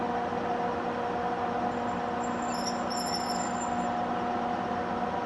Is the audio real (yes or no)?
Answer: yes